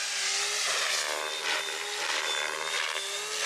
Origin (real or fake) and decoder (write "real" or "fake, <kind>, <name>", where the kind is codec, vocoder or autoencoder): real